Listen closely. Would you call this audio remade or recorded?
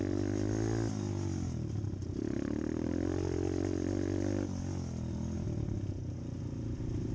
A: recorded